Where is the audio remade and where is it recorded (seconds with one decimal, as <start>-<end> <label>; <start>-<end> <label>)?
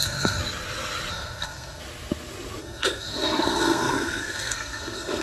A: 0.0-0.4 remade; 0.4-1.1 recorded; 1.1-1.8 remade; 1.8-2.6 recorded; 2.6-5.2 remade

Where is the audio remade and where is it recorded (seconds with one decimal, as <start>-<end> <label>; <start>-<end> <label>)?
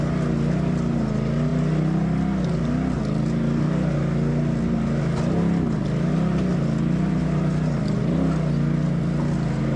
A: 0.0-9.8 recorded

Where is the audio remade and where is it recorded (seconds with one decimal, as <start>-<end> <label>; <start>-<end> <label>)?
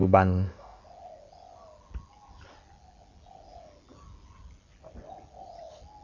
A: 0.0-0.8 remade; 0.8-6.0 recorded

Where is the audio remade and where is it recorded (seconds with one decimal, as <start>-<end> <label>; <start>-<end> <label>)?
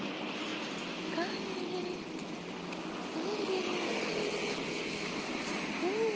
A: 0.0-6.2 recorded